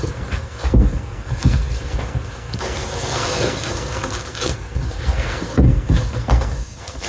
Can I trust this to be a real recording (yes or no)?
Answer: no